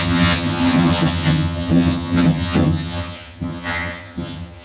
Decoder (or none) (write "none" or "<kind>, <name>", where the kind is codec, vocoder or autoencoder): vocoder, HiFi-GAN